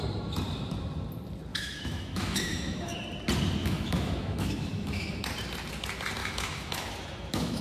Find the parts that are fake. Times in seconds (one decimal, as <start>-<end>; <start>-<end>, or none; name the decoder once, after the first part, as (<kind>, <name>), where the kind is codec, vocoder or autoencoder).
1.5-3.0 (autoencoder, DAC-VAE); 3.6-5.2; 6.2-7.6